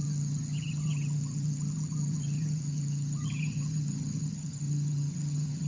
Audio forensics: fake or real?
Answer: fake